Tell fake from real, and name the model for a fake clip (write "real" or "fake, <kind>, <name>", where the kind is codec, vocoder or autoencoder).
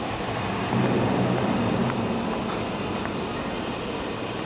real